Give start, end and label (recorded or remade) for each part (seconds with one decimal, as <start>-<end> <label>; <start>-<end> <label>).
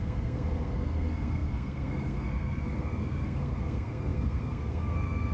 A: 0.0-5.3 remade